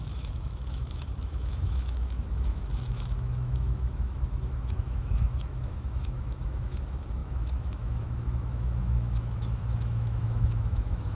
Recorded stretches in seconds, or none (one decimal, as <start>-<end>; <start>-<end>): none